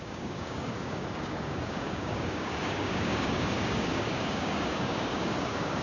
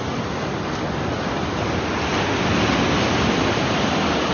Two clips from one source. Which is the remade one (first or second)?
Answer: first